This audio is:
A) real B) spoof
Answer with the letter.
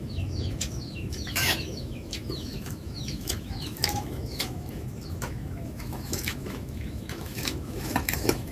B